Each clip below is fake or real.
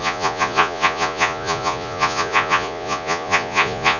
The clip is fake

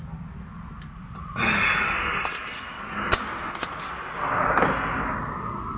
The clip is real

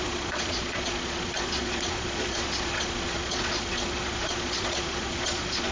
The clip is fake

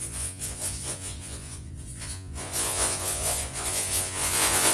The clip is fake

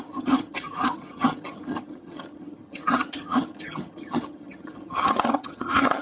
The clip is fake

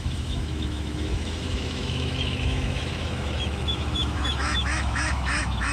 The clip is fake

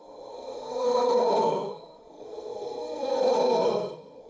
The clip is fake